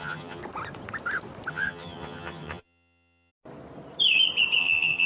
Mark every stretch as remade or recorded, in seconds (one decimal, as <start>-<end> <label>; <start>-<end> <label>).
0.0-0.4 remade; 0.4-1.5 recorded; 1.5-3.3 remade; 3.3-4.6 recorded; 4.6-5.1 remade